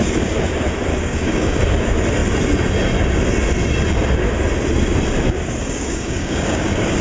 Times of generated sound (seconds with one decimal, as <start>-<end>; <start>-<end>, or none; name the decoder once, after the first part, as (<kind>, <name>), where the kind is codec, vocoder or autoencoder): 0.9-1.6 (codec, DAC); 5.6-7.0